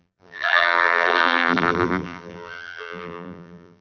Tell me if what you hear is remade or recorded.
remade